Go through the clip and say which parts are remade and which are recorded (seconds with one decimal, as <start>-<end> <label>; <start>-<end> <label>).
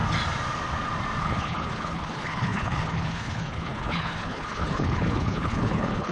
0.0-1.2 recorded; 1.2-6.1 remade